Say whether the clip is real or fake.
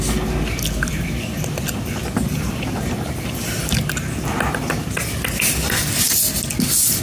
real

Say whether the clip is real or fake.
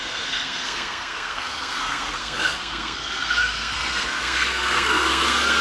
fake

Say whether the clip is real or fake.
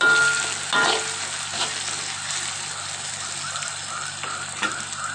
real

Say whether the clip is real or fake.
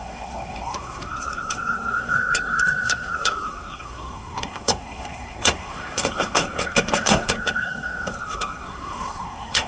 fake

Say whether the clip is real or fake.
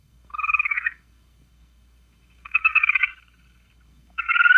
fake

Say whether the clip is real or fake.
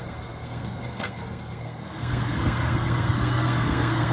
fake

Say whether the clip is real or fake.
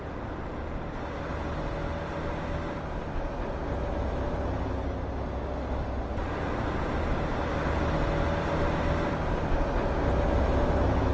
real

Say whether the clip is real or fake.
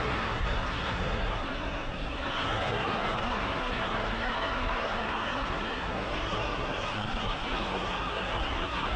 fake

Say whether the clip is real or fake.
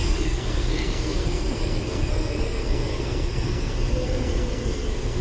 fake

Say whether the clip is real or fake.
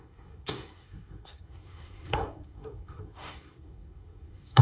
fake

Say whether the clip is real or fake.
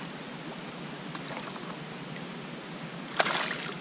real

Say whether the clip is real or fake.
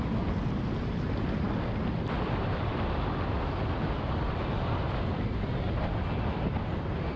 real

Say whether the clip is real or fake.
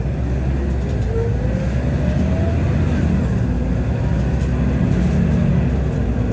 real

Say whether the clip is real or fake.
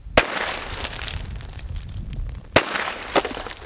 real